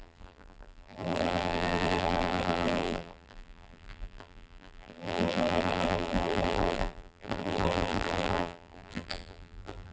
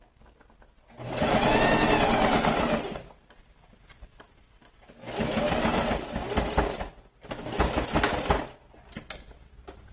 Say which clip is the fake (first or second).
first